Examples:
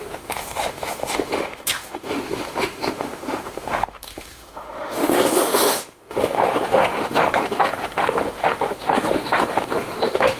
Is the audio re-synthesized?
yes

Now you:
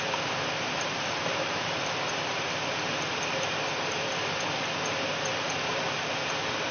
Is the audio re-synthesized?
yes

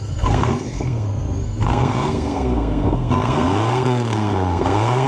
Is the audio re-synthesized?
yes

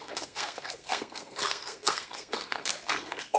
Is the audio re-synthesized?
yes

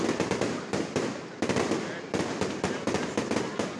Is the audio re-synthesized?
yes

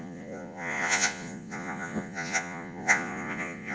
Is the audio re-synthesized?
yes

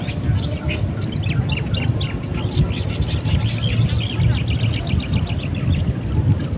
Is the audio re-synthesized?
no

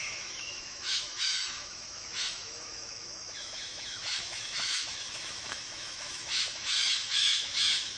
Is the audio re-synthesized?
yes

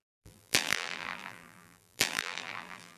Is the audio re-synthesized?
yes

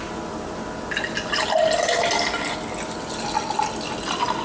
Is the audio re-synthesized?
no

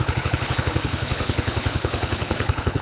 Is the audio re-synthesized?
yes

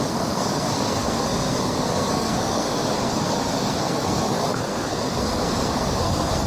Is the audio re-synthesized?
yes